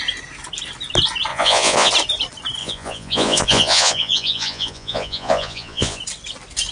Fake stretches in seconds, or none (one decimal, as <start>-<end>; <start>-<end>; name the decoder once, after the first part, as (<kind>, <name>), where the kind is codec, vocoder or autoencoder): 1.3-1.9 (vocoder, Vocos); 2.6-6.0